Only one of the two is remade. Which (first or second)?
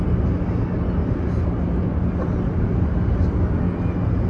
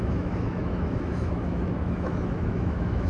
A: second